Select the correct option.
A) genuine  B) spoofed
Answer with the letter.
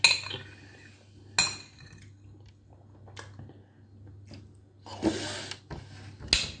A